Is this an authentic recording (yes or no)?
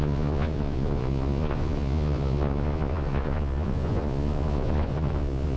no